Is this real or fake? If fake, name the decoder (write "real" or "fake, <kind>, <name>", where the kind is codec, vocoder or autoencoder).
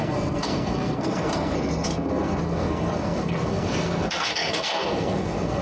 fake, codec, SNAC